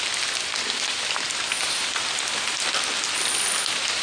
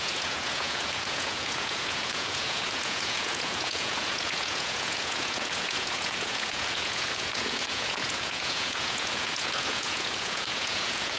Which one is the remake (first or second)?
second